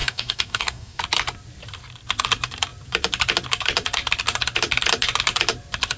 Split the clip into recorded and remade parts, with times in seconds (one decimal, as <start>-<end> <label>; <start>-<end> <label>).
0.0-1.0 remade; 1.0-6.0 recorded